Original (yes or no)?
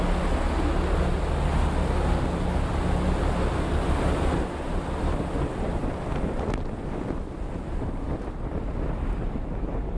yes